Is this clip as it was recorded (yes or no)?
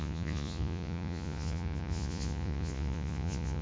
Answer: no